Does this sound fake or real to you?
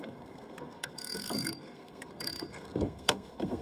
fake